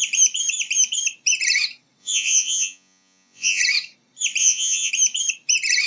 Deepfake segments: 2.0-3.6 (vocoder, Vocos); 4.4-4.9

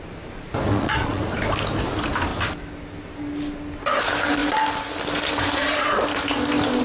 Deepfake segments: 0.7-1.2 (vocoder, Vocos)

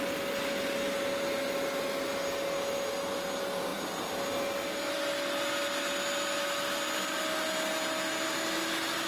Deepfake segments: none

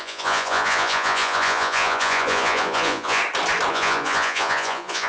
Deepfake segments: 0.0-3.2 (vocoder, Vocos); 3.7-5.1

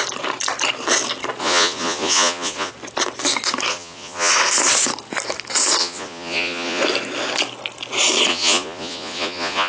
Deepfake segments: 1.4-2.7 (vocoder, Vocos); 3.7-4.3; 5.8-6.8; 8.3-9.7

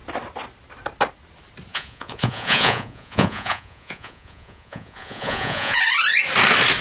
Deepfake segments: 1.7-5.8 (vocoder, Vocos)